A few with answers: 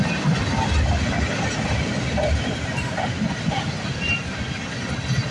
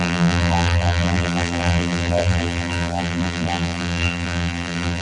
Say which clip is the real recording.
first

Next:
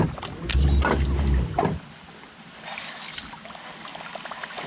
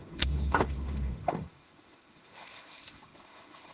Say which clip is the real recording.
first